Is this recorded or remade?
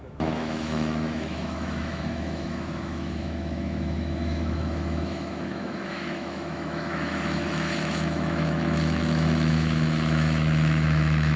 remade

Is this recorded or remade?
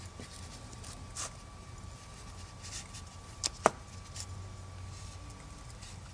recorded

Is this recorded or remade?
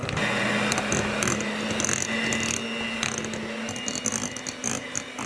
recorded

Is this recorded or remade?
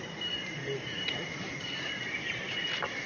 recorded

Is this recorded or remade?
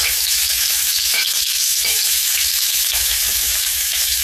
remade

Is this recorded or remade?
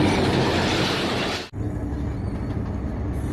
recorded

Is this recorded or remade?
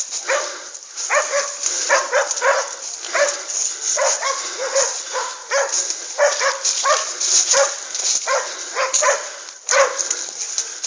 recorded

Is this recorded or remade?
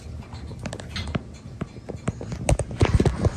recorded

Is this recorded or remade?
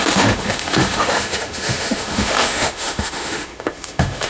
remade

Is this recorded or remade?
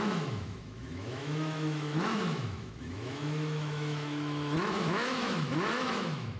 remade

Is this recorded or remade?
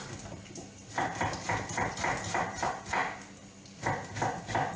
recorded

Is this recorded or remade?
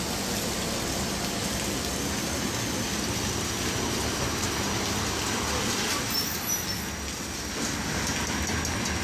recorded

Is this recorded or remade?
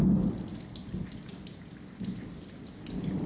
recorded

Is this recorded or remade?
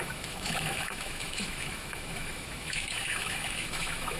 remade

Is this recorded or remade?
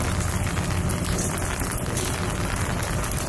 recorded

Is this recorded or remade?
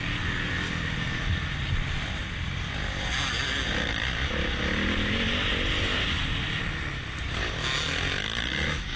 recorded